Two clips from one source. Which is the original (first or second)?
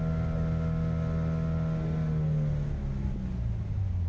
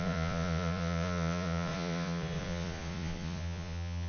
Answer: first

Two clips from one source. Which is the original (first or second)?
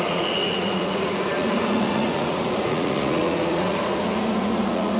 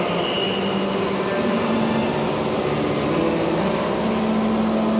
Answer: second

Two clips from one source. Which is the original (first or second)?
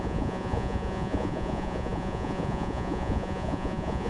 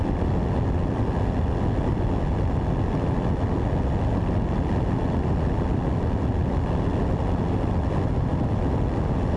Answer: second